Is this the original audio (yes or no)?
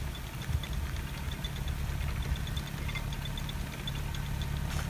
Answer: yes